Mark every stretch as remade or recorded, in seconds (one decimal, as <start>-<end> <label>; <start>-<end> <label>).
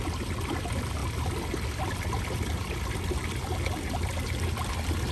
0.0-5.1 recorded